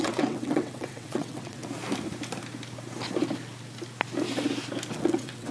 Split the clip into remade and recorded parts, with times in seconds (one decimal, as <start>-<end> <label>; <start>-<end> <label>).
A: 0.0-1.6 remade; 1.6-4.9 recorded; 4.9-5.5 remade